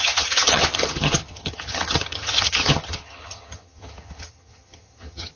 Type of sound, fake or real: fake